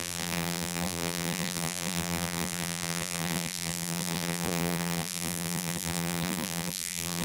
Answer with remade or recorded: remade